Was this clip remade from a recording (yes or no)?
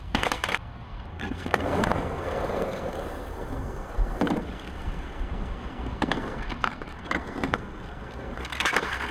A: yes